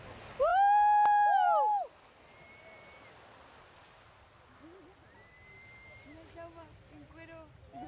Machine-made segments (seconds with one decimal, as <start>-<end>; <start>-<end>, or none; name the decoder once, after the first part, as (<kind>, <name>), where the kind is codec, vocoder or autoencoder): none